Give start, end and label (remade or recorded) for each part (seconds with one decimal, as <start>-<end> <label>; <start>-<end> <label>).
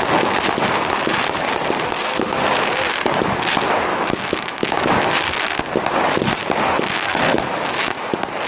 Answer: 0.0-3.9 recorded; 3.9-5.6 remade; 5.6-7.1 recorded; 7.1-8.1 remade; 8.1-8.5 recorded